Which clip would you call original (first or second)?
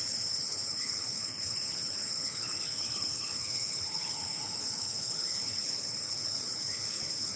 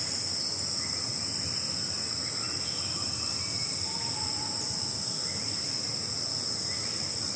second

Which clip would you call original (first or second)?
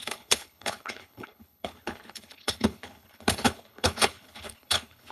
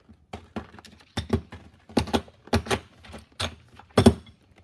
second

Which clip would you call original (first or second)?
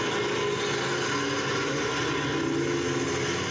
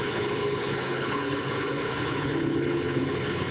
first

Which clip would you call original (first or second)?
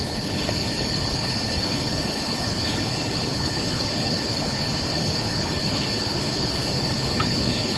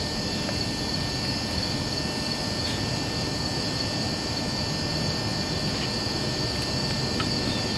second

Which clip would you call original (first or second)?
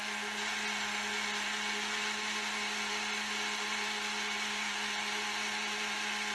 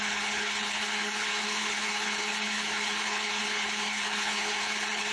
first